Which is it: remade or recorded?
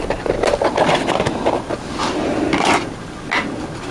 recorded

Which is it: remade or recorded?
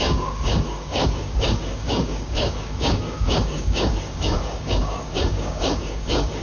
remade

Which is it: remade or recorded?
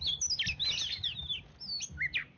recorded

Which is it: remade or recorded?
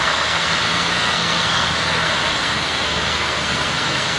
remade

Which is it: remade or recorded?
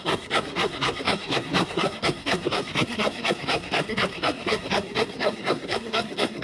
remade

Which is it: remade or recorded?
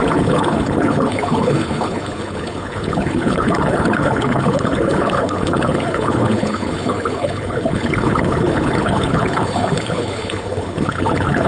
remade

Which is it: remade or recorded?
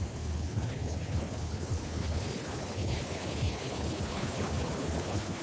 remade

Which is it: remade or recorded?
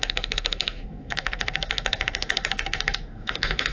remade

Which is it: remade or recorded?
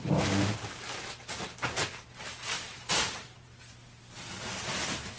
remade